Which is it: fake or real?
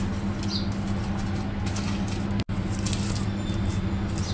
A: real